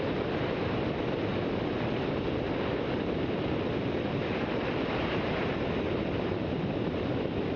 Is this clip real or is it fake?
real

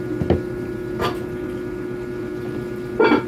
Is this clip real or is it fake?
real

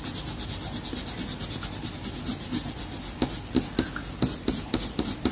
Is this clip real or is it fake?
real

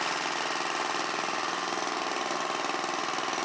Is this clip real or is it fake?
real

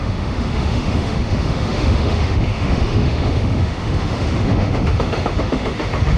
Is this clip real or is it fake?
fake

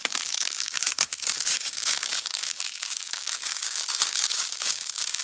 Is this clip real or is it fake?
fake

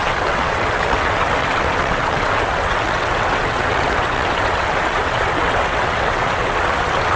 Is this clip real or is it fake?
fake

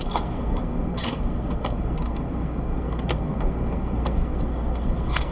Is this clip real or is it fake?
fake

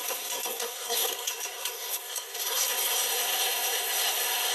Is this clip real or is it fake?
fake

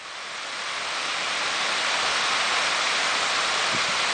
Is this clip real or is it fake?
real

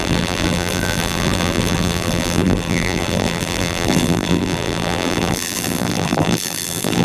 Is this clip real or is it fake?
fake